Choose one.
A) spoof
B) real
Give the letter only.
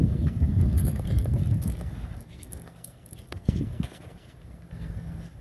A